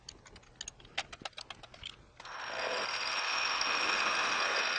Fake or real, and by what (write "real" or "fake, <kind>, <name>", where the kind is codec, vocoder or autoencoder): real